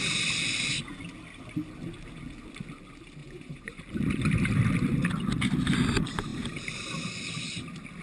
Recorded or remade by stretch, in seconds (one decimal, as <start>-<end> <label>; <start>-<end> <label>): 0.0-3.2 recorded; 3.2-3.8 remade; 3.8-8.0 recorded